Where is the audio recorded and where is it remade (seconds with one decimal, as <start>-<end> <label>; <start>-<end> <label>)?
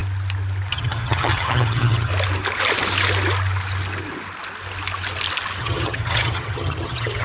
0.0-0.7 recorded; 0.7-2.1 remade; 2.1-5.6 recorded; 5.6-7.2 remade